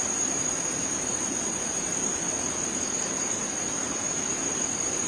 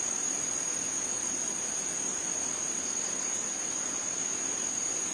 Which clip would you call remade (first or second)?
first